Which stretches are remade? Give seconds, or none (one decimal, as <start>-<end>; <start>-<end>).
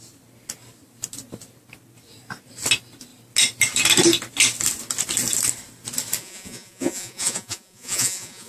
6.2-8.5